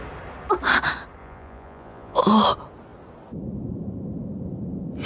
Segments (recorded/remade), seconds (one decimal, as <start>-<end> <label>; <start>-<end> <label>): 0.0-1.2 recorded; 1.2-2.2 remade; 2.2-5.1 recorded